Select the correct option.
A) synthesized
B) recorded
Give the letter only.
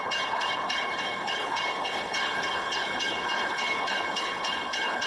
A